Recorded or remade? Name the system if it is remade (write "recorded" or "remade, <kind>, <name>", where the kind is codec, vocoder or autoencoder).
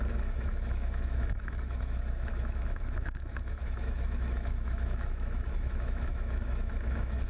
remade, autoencoder, DAC-VAE